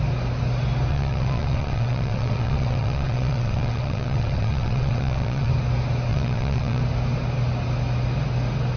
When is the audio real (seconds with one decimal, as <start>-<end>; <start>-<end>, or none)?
0.0-0.9; 5.5-6.1; 6.8-8.8